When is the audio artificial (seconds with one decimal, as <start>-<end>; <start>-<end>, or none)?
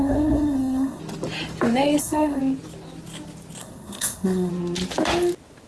0.0-1.0; 2.0-2.4; 3.6-4.5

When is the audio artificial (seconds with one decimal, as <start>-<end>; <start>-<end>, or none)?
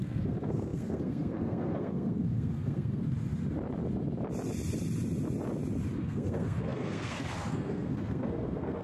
0.0-3.0; 6.0-8.8